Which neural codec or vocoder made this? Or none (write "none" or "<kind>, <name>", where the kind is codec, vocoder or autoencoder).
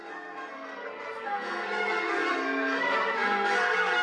codec, SNAC